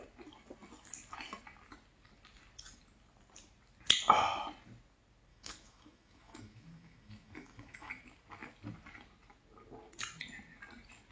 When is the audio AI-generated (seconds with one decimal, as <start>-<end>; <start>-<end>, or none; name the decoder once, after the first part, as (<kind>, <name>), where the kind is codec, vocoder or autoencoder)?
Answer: 5.3-7.9 (autoencoder, DAC-VAE)